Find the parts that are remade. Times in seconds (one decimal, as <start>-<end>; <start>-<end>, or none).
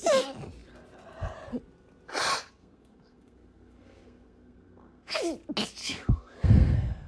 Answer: 2.6-5.2; 5.8-7.1